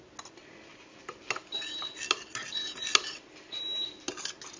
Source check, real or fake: real